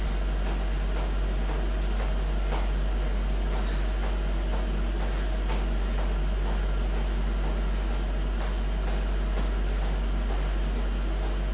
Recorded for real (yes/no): yes